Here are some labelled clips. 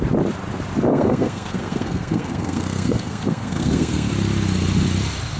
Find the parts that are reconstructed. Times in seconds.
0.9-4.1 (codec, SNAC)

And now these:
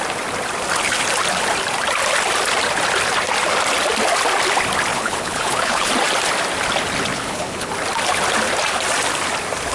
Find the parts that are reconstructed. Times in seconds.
4.9-5.9 (codec, HILCodec); 7.1-7.7

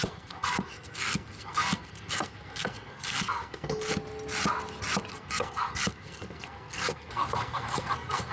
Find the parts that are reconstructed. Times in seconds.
0.0-3.9 (codec, SNAC); 5.1-8.3

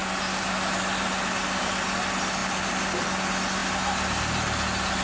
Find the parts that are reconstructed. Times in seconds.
none